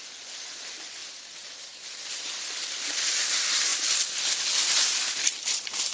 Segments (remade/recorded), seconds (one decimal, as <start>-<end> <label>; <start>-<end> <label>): 0.0-5.9 recorded